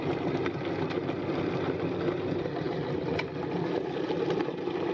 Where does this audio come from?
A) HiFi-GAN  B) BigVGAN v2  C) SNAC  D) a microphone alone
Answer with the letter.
D